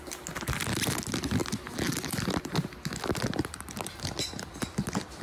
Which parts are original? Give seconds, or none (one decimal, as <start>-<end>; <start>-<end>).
0.0-5.2